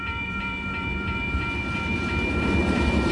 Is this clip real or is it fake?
fake